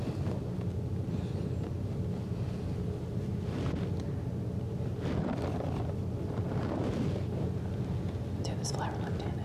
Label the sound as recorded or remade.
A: recorded